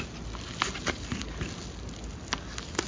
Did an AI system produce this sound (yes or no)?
no